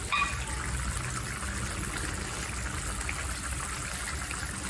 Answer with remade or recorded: recorded